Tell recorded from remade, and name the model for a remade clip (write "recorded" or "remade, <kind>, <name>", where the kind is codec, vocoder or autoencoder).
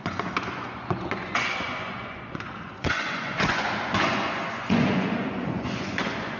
remade, vocoder, Vocos